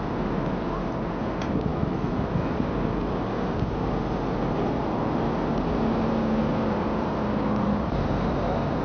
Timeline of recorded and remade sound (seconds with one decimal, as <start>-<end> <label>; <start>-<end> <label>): 0.0-1.7 recorded; 1.7-2.5 remade; 2.5-8.8 recorded